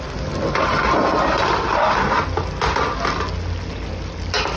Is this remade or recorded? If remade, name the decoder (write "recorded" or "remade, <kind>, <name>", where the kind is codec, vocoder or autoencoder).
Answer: recorded